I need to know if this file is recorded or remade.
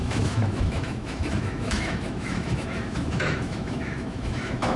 remade